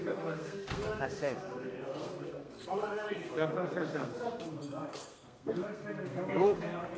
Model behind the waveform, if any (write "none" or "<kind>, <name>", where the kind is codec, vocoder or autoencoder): codec, SNAC